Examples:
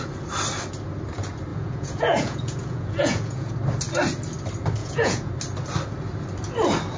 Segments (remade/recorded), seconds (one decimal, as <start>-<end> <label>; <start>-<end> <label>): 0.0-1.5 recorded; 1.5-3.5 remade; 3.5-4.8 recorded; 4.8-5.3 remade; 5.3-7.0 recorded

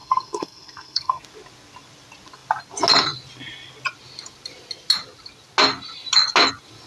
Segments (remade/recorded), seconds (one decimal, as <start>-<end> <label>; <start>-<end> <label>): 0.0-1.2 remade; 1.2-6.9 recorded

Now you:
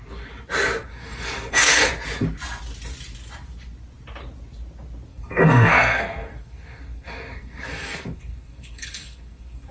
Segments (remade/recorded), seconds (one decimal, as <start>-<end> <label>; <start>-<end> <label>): 0.0-0.9 recorded; 0.9-1.9 remade; 1.9-5.1 recorded; 5.1-9.7 remade

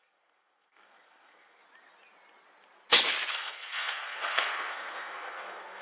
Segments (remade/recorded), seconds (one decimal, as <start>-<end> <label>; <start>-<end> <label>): 0.0-1.6 remade; 1.6-3.3 recorded; 3.3-5.8 remade

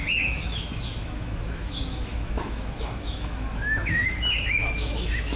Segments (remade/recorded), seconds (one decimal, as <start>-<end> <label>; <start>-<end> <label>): 0.0-5.4 remade

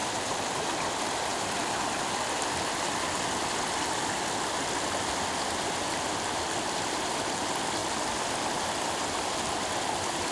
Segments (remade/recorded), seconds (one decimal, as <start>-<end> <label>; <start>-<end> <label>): 0.0-10.3 recorded